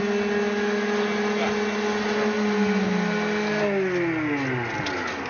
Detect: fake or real real